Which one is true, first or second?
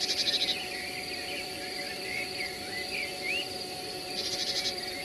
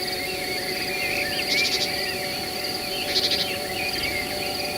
second